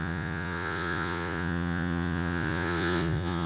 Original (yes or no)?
no